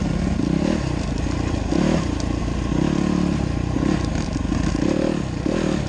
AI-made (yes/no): no